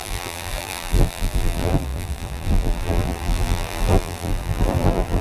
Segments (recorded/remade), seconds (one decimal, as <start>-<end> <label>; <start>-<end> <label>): 0.0-5.2 remade